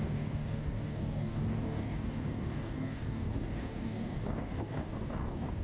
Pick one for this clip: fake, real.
fake